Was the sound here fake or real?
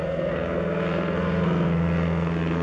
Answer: fake